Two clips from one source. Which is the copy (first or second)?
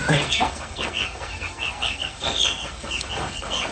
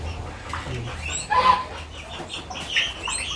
first